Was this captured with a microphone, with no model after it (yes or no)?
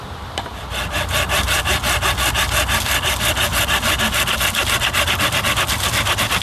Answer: yes